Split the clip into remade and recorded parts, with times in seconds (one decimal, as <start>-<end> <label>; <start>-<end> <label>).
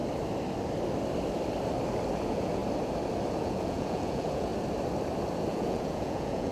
0.0-2.2 recorded; 2.2-2.6 remade; 2.6-3.3 recorded; 3.3-4.5 remade; 4.5-5.5 recorded; 5.5-6.5 remade